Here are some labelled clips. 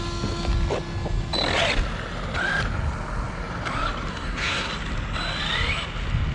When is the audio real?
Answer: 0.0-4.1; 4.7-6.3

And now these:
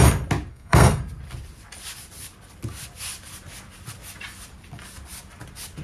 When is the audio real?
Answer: 0.0-0.5; 1.0-5.8

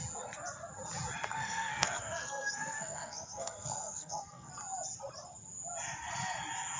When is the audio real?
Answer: 0.0-1.3; 4.5-6.8

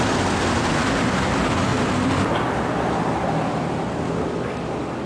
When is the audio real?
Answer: 0.0-5.1

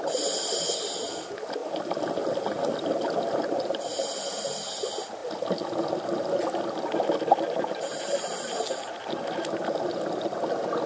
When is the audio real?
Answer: 0.0-10.9

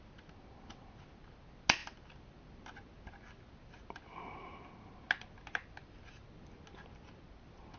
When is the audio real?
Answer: 0.0-7.8

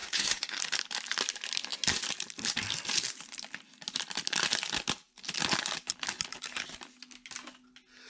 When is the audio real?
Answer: 0.6-8.1

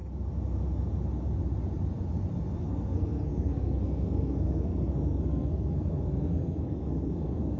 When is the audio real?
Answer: 0.0-2.6